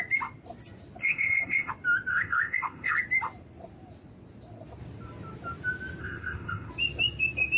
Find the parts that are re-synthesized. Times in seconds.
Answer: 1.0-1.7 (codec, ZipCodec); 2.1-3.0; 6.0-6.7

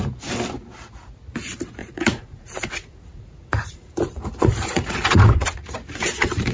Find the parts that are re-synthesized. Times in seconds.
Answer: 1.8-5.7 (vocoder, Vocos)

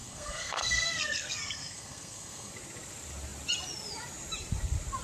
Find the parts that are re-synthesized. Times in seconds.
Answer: 0.0-2.5 (codec, SNAC)

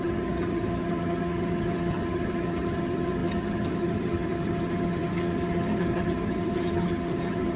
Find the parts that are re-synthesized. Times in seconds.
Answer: 0.0-7.6 (vocoder, HiFi-GAN)

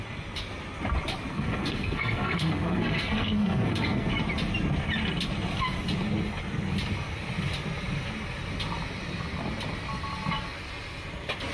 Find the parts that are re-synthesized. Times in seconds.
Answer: 1.3-4.1 (codec, SNAC)

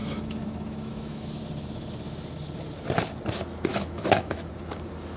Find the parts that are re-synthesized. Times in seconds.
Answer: 0.0-1.4 (autoencoder, DAC-VAE); 3.7-4.5